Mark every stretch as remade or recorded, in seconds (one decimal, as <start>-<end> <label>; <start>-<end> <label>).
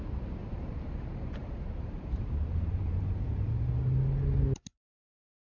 0.0-0.4 recorded; 0.4-3.7 remade; 3.7-5.5 recorded